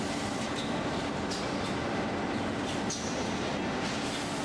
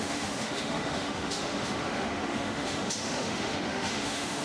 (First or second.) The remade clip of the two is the second